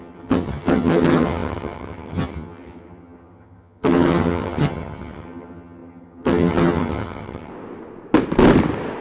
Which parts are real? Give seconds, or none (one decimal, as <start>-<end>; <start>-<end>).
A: 7.5-9.0